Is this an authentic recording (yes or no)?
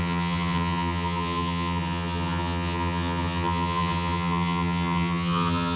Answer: no